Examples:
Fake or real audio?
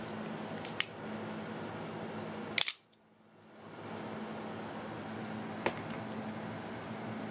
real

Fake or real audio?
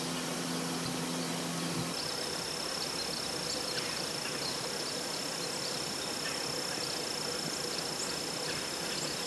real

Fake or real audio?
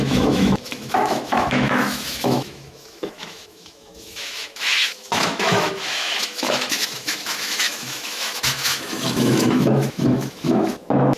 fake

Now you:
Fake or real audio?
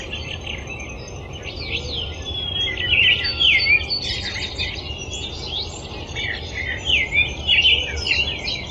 real